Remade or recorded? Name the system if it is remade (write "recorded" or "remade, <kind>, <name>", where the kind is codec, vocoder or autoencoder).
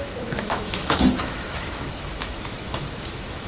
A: remade, autoencoder, DAC-VAE